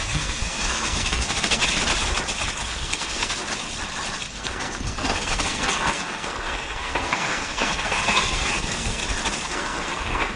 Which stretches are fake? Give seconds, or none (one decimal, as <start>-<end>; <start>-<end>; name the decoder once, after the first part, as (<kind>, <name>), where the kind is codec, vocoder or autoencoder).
0.0-1.6 (codec, SNAC); 2.6-3.4; 4.3-9.0; 9.5-10.4